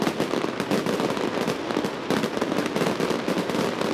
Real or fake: real